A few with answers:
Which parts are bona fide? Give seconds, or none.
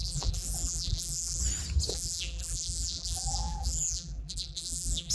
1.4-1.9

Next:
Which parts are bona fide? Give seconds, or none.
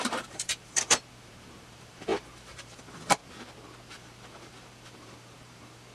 3.2-3.9